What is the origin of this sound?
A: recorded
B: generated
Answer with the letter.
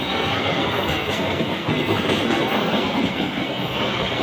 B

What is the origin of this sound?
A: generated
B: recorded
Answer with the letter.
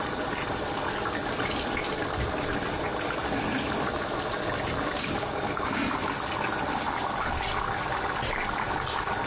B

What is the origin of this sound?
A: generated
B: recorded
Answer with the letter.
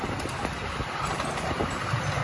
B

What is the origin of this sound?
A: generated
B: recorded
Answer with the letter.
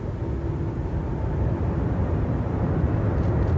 B